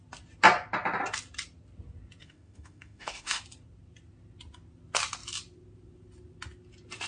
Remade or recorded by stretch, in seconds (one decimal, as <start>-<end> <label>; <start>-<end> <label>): 0.0-2.2 recorded; 2.2-3.4 remade; 3.4-7.1 recorded